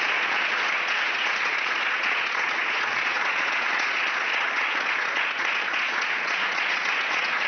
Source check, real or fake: fake